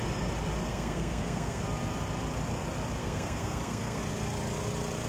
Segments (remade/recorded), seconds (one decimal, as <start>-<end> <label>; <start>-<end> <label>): 0.0-0.7 recorded; 0.7-1.6 remade; 1.6-3.0 recorded; 3.0-4.0 remade; 4.0-5.1 recorded

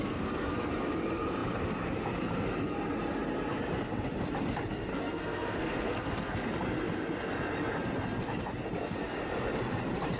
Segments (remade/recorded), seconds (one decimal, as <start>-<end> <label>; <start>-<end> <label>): 0.0-0.7 remade; 0.7-4.9 recorded; 4.9-6.5 remade; 6.5-10.2 recorded

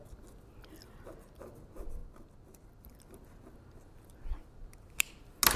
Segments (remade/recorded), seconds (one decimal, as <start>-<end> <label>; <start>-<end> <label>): 0.0-5.6 recorded

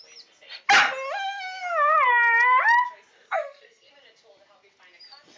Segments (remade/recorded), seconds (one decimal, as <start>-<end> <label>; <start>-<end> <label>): 0.0-3.3 recorded; 3.3-3.9 remade; 3.9-5.4 recorded

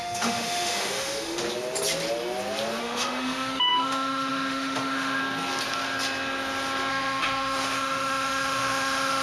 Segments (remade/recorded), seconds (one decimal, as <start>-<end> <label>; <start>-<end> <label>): 0.0-1.4 remade; 1.4-2.8 recorded; 2.8-5.2 remade; 5.2-6.9 recorded; 6.9-9.2 remade